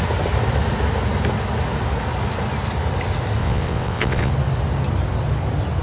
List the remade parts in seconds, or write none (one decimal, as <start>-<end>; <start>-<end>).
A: 3.4-4.3